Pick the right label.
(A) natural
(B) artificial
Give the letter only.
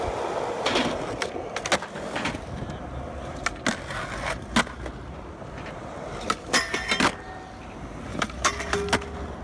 A